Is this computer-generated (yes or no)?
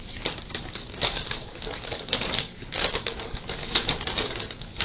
yes